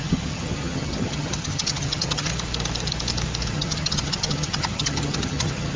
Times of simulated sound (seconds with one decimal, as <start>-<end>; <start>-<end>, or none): 0.0-2.3; 3.5-5.8